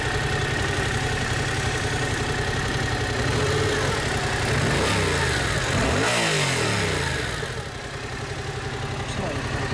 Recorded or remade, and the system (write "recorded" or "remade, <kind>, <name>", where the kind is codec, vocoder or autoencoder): recorded